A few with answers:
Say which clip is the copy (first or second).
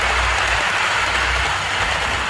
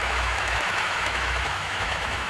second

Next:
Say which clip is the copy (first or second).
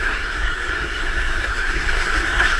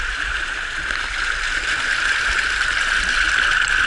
first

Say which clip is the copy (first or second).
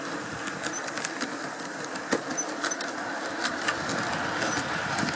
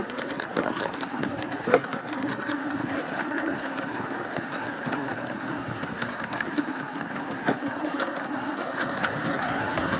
second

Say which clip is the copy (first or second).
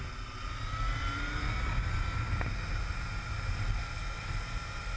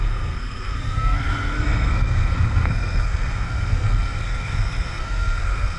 second